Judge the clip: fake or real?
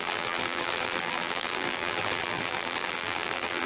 fake